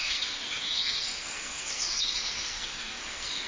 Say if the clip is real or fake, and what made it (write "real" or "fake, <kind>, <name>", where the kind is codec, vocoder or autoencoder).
fake, codec, SNAC